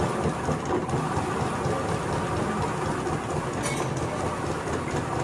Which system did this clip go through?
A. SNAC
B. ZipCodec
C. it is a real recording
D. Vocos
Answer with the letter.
C